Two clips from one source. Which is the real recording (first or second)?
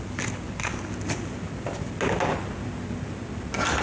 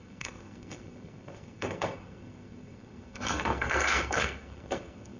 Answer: first